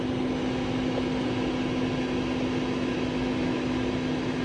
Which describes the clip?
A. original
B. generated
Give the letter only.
A